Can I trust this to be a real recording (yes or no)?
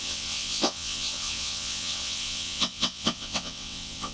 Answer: no